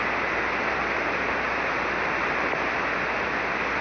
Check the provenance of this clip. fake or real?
real